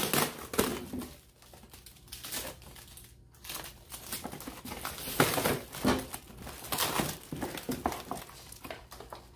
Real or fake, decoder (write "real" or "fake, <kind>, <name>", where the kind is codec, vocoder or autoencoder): real